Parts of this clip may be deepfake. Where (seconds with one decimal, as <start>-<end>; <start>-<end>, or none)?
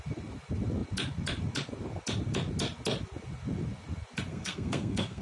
4.3-5.2